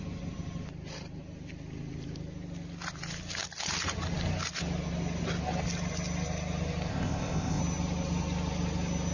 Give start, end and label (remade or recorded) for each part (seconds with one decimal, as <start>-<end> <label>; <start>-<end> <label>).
0.0-6.9 recorded; 6.9-7.6 remade; 7.6-9.1 recorded